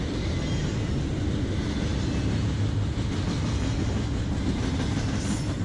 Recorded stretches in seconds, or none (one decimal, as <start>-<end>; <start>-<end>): 0.0-5.6